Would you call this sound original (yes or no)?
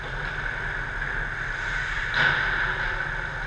yes